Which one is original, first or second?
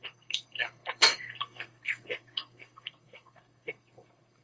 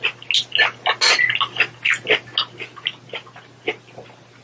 second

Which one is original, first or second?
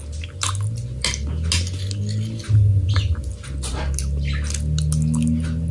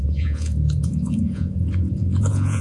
first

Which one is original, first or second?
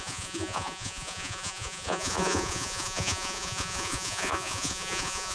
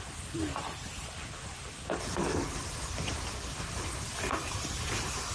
second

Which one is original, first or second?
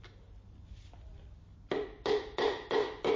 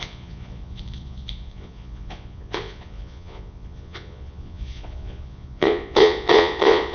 first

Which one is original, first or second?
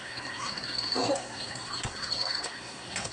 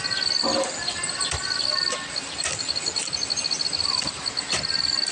second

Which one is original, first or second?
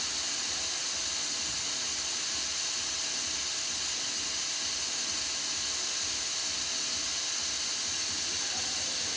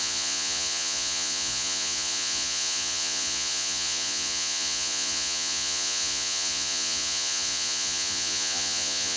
first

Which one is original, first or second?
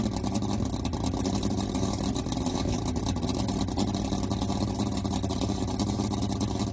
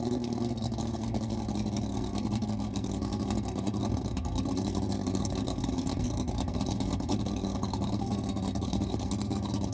first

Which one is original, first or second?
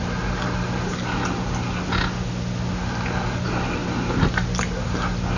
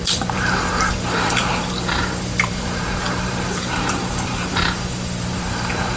first